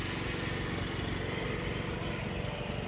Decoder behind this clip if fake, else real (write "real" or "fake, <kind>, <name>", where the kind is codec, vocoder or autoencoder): real